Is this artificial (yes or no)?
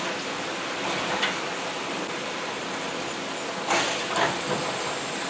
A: no